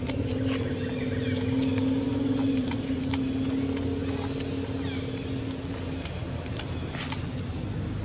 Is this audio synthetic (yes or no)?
no